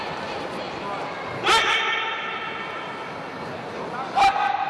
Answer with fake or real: real